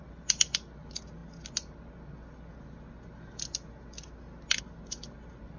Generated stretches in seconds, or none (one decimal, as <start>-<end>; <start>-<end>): none